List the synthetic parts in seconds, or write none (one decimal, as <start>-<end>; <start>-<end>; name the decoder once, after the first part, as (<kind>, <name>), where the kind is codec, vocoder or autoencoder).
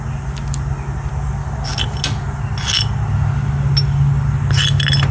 none